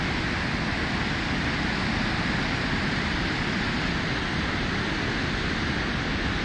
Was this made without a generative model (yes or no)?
yes